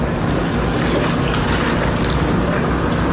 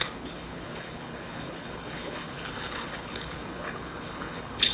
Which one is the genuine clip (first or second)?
first